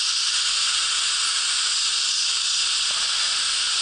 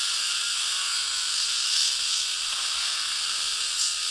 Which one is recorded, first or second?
first